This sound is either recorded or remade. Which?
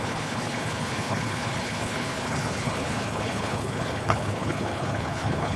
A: remade